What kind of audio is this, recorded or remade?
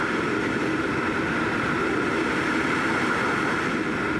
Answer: recorded